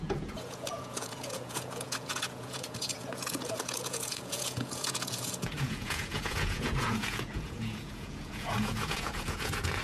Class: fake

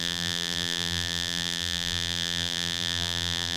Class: fake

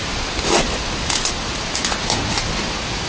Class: real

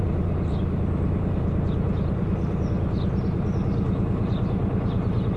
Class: fake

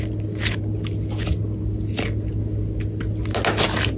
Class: real